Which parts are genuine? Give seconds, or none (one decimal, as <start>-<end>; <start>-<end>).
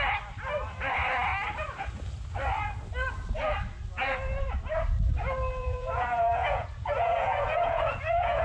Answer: 0.0-5.6